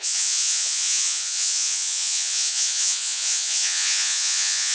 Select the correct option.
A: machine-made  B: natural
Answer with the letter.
A